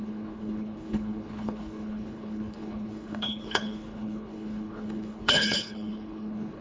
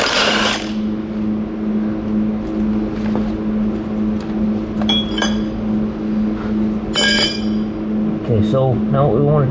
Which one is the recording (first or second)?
second